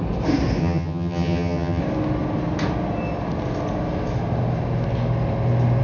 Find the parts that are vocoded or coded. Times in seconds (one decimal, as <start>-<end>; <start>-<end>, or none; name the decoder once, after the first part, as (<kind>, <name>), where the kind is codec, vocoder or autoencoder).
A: 0.6-1.8 (vocoder, HiFi-GAN)